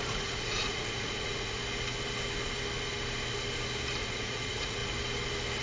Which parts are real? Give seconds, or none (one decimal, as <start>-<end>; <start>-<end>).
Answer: 1.6-4.0; 4.8-5.6

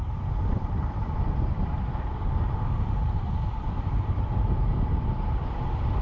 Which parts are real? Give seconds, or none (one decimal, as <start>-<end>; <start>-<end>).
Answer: 0.0-6.0

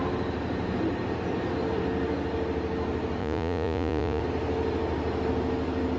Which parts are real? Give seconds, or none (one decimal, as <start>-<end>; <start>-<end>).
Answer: 0.0-3.2; 4.2-6.0